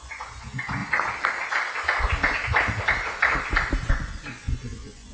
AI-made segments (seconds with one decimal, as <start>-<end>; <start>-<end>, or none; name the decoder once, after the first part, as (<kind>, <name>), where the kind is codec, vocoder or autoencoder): 0.0-0.8 (vocoder, Vocos); 3.9-5.1